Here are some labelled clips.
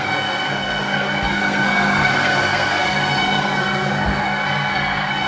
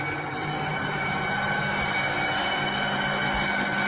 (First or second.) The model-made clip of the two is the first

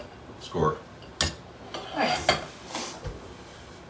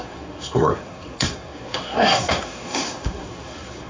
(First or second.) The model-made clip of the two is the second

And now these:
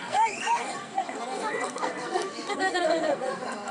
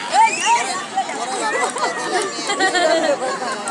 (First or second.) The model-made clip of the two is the first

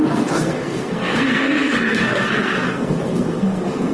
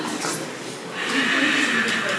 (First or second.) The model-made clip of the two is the first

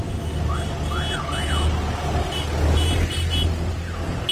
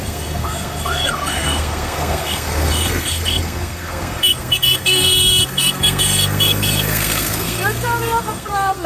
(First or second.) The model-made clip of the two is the second